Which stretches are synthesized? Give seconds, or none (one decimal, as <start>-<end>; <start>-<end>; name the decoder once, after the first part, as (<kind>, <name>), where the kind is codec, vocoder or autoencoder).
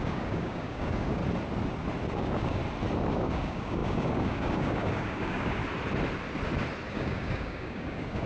0.0-1.2 (codec, DAC); 2.1-2.6; 3.1-5.6; 6.9-8.3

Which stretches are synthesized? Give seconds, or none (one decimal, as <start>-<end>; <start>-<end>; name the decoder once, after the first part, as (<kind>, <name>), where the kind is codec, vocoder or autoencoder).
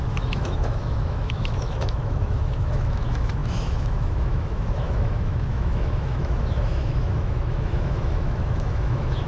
0.0-9.3 (autoencoder, DAC-VAE)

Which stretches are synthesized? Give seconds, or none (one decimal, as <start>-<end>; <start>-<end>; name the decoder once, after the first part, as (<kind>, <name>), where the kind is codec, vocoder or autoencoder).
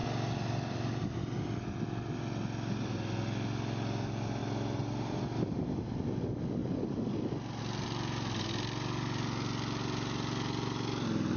none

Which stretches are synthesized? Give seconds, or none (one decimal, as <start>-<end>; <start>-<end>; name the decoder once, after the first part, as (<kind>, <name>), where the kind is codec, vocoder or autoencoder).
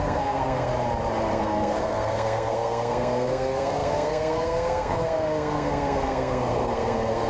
0.0-0.7 (codec, SNAC); 1.3-7.3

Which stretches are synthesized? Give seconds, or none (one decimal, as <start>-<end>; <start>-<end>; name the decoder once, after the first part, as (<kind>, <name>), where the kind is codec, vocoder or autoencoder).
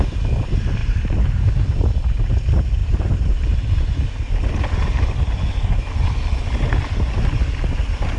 0.8-1.5 (vocoder, BigVGAN v2); 2.8-3.5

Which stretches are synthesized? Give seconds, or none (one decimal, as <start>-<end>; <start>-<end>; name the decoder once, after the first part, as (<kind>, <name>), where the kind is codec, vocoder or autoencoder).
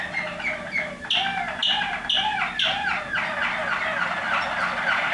none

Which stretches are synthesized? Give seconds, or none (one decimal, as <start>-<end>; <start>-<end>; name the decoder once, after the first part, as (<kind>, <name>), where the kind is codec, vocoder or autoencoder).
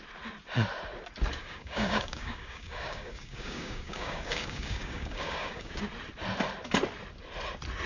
1.4-5.9 (codec, DAC)